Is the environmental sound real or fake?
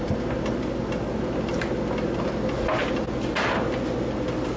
real